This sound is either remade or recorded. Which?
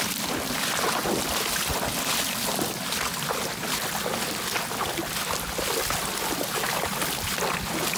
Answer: recorded